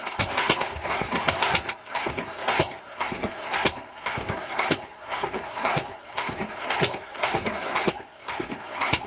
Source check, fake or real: fake